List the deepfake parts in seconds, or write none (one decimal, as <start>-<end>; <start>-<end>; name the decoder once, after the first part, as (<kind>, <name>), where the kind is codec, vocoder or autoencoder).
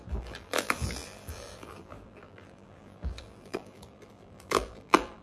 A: 0.0-5.2 (vocoder, BigVGAN v2)